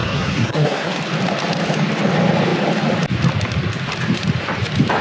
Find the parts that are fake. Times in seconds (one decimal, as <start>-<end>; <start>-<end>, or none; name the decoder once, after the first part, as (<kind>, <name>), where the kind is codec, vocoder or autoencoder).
0.0-1.0 (codec, SNAC)

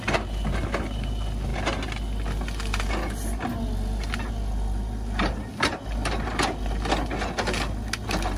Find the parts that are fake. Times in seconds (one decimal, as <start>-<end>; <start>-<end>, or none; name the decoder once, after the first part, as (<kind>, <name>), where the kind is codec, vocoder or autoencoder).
none

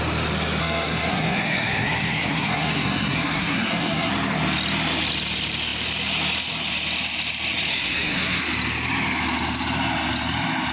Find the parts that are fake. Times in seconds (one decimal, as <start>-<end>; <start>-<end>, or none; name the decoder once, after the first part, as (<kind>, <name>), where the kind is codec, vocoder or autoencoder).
0.6-4.1 (codec, SNAC); 7.7-8.4

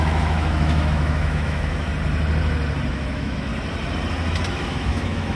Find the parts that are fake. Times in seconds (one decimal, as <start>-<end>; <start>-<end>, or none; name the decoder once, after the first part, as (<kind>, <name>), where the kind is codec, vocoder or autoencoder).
0.0-1.9 (autoencoder, DAC-VAE); 2.9-3.5; 4.5-5.4

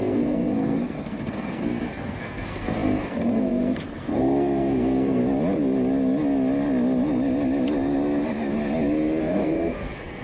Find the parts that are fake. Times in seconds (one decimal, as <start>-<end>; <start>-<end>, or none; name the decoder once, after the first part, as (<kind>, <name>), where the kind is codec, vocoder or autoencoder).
0.0-5.2 (codec, SNAC); 9.2-10.2

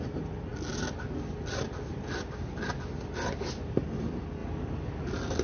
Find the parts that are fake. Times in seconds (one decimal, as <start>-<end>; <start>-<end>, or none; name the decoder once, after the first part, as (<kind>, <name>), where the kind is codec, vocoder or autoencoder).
none

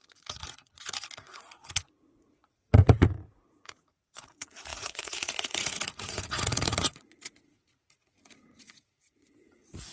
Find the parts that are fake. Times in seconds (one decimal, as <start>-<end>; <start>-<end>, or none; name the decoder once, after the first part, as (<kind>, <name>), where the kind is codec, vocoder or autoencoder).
0.0-9.9 (vocoder, Vocos)

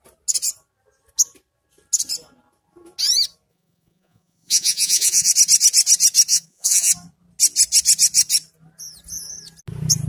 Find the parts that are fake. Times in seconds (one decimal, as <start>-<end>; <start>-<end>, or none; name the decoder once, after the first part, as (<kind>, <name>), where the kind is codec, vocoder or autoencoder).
3.5-5.3 (vocoder, Vocos); 6.3-6.9